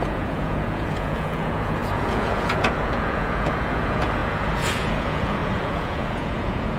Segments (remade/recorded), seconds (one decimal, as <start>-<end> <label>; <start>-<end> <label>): 0.0-6.8 remade